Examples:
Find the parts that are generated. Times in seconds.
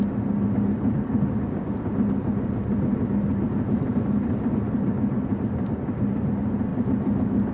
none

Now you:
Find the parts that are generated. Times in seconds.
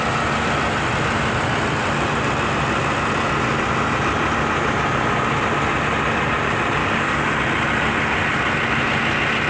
6.8-7.3 (codec, DAC)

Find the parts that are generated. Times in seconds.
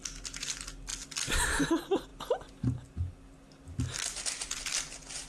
none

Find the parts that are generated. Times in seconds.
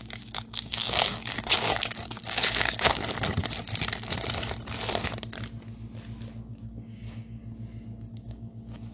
0.0-3.0 (codec, DAC); 6.5-7.4; 8.1-8.9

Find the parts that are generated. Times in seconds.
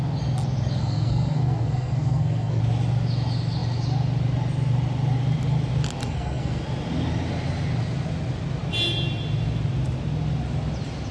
0.8-2.6 (codec, SNAC); 6.0-6.6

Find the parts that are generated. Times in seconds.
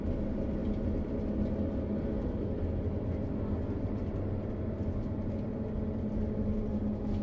none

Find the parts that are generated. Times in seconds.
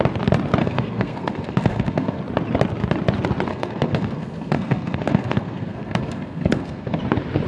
0.6-2.2 (codec, SNAC); 3.5-7.0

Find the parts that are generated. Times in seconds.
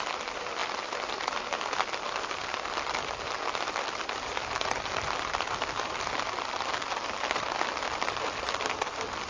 none